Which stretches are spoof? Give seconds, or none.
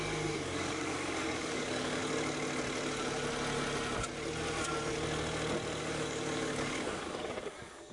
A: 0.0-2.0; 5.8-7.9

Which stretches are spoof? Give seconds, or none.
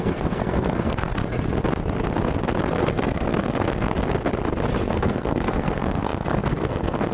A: 0.0-1.1; 2.6-3.9; 4.8-7.1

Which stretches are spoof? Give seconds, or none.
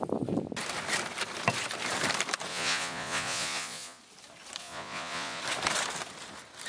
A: 2.5-4.0; 4.6-5.4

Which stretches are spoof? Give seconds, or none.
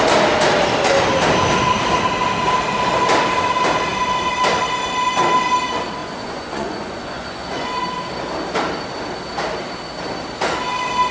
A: 6.0-7.8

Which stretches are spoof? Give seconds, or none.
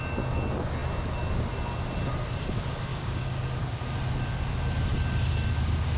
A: 2.9-3.9